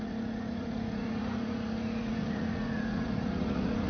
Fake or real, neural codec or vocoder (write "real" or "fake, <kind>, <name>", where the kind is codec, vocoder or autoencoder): fake, vocoder, Vocos